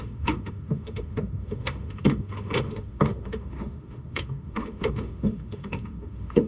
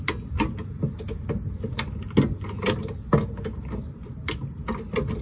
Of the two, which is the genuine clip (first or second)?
second